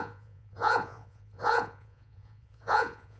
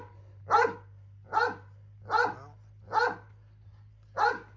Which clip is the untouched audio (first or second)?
second